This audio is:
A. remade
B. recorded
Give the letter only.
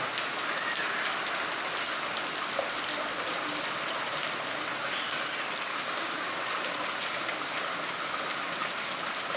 B